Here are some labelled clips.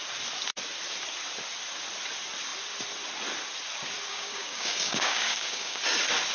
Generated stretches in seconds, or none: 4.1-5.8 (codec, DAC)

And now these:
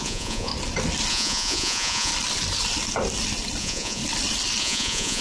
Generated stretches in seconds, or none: 0.0-0.5 (vocoder, Vocos); 1.1-2.1; 3.6-4.0; 4.6-5.2

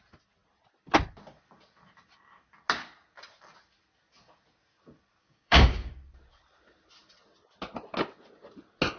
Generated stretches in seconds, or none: 5.2-5.9 (codec, DAC)

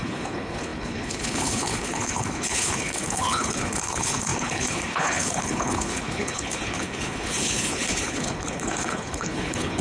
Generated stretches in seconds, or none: 0.0-9.8 (codec, HILCodec)

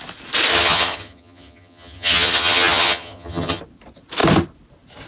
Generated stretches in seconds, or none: 0.5-3.6 (vocoder, HiFi-GAN)

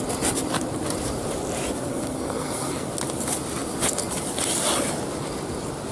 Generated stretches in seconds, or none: 1.9-2.9 (codec, SNAC)

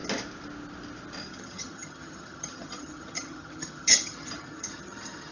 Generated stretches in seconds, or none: 1.2-5.3 (vocoder, HiFi-GAN)

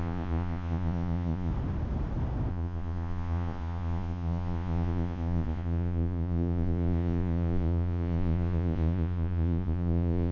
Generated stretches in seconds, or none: 0.0-1.5 (vocoder, Vocos); 2.5-10.3